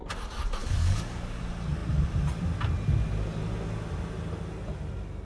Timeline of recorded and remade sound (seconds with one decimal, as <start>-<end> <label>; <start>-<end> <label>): 0.0-0.6 recorded; 0.6-1.4 remade; 1.4-5.2 recorded